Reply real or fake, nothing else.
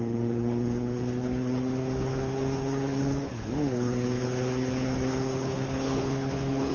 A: fake